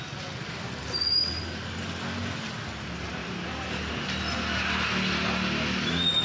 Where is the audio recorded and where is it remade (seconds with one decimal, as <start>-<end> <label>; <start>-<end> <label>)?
0.0-3.2 recorded; 3.2-3.9 remade; 3.9-6.2 recorded